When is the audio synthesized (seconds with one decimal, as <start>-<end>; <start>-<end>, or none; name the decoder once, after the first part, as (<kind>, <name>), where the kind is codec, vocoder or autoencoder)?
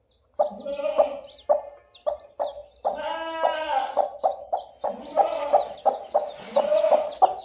none